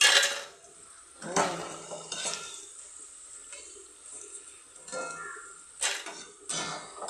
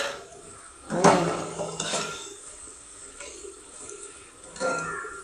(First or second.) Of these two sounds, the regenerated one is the second